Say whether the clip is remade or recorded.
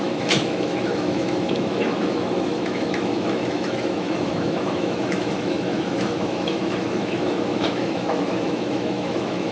remade